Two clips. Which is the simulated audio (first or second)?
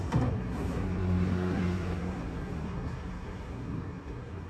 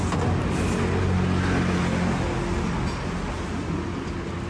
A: first